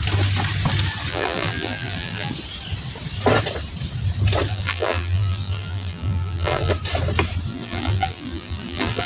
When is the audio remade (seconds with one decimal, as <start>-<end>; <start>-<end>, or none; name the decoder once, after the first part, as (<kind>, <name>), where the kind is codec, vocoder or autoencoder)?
1.1-2.3 (vocoder, BigVGAN v2); 4.5-6.7; 7.5-9.1